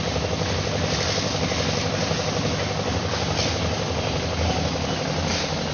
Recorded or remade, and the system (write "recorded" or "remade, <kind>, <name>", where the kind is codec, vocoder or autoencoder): recorded